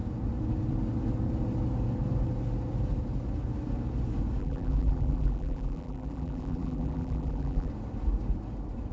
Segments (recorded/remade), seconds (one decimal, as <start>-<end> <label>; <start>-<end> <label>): 0.0-4.4 recorded; 4.4-7.7 remade; 7.7-8.9 recorded